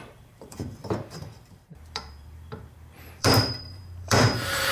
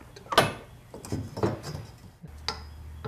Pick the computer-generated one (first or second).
first